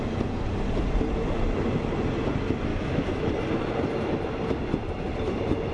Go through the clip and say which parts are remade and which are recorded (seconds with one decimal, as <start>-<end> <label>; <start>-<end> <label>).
0.0-2.7 recorded; 2.7-3.3 remade; 3.3-5.7 recorded